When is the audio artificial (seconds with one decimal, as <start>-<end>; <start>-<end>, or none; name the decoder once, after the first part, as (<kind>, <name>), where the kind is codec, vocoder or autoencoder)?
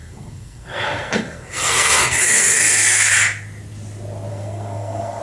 0.0-3.1 (codec, SNAC); 4.3-5.2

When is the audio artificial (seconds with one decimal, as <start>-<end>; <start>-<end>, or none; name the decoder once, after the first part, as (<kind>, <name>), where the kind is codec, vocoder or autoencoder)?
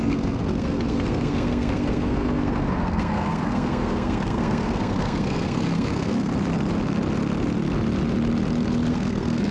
0.0-6.3 (codec, SNAC); 8.9-9.5